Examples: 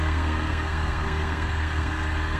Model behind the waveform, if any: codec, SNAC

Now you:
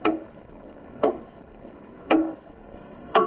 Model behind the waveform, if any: codec, SNAC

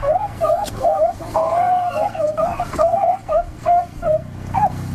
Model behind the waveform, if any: codec, SNAC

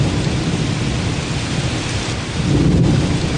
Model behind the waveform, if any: none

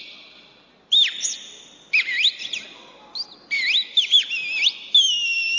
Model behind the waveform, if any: none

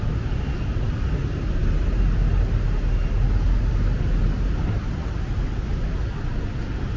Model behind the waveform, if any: none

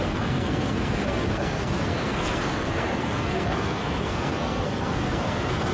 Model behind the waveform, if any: codec, SNAC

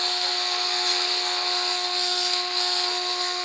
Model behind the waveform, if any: codec, SNAC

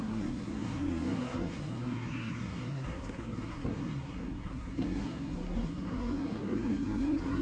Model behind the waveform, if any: codec, SNAC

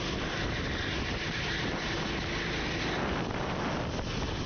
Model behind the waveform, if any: none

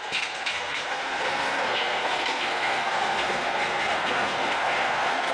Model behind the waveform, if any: codec, SNAC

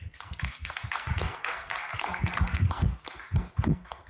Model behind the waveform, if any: codec, SNAC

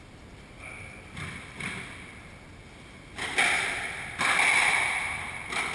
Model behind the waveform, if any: none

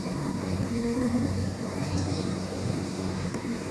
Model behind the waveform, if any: codec, SNAC